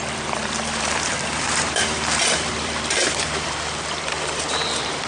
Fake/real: fake